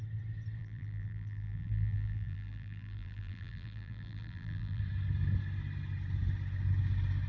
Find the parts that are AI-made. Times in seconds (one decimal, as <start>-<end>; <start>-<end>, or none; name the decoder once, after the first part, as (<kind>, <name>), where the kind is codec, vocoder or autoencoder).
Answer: 0.6-4.8 (vocoder, BigVGAN v2)